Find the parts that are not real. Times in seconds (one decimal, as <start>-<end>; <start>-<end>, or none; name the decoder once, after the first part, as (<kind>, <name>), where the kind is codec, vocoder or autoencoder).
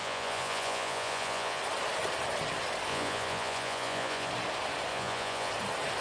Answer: 0.0-1.6 (vocoder, Vocos); 2.9-4.3; 4.9-5.5